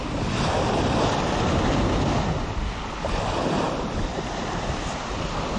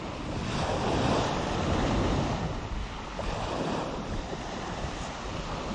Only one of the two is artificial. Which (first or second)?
second